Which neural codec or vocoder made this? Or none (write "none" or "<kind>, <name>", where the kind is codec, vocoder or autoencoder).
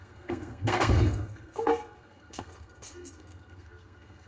codec, SNAC